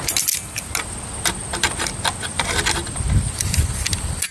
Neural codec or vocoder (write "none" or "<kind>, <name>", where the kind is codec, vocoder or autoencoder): none